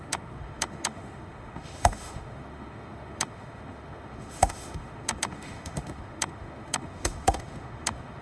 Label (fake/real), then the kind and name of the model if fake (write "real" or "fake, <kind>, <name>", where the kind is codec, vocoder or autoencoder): fake, autoencoder, DAC-VAE